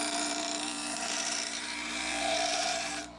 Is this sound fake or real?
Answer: fake